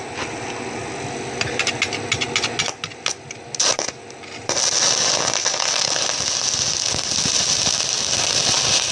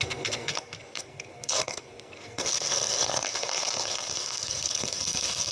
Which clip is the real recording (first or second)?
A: first